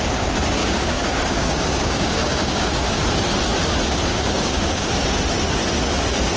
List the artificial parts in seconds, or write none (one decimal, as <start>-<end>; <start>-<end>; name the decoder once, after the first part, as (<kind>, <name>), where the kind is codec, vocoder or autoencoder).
0.6-3.0 (codec, DAC); 4.1-4.9